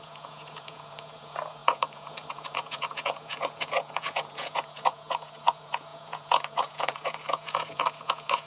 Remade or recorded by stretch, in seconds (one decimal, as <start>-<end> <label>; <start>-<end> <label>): 0.0-8.5 remade